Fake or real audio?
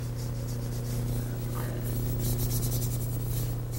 real